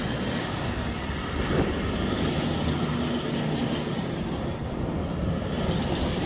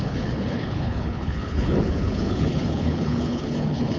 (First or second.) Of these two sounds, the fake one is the second